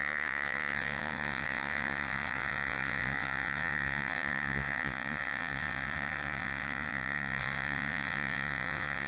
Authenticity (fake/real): fake